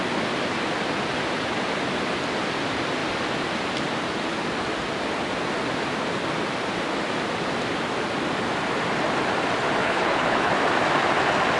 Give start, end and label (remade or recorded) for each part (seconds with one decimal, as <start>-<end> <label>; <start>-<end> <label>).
0.0-9.8 recorded; 9.8-10.5 remade; 10.5-11.6 recorded